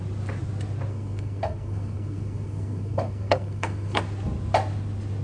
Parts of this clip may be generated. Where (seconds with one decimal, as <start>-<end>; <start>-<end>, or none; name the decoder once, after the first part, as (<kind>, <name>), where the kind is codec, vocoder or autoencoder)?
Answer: 0.9-4.0 (codec, SNAC)